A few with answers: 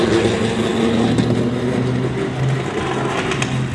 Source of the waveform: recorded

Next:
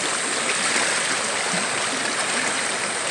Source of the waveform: recorded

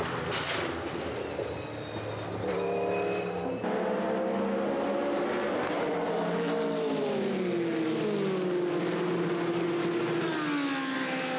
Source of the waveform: recorded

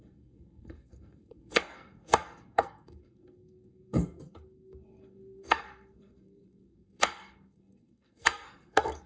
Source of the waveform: remade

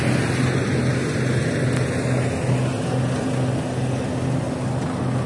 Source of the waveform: recorded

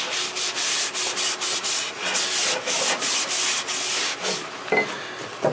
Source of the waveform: recorded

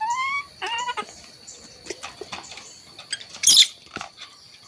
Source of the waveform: recorded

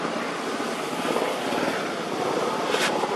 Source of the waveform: recorded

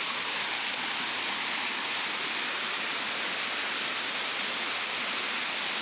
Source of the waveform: recorded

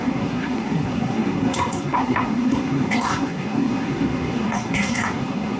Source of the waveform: remade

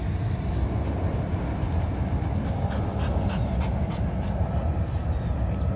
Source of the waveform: recorded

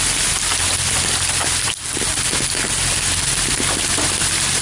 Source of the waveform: recorded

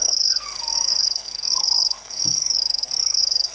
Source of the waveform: remade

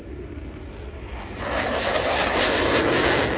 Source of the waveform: recorded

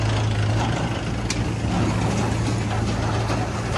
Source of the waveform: recorded